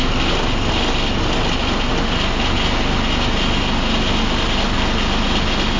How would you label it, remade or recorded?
recorded